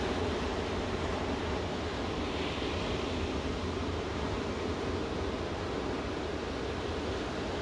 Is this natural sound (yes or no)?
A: yes